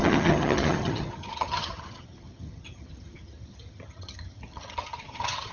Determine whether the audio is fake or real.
fake